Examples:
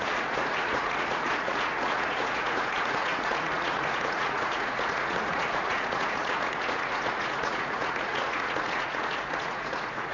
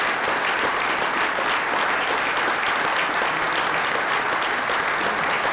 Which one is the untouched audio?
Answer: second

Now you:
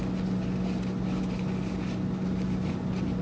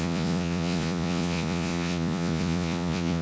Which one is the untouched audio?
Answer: first